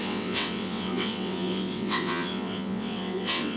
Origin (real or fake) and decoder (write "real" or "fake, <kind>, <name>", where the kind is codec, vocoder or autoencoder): fake, vocoder, WaveNeXt